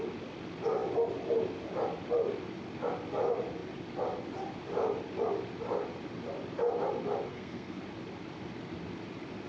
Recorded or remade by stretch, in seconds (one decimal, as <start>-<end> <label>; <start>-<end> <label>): 0.0-7.3 recorded; 7.3-7.8 remade; 7.8-9.5 recorded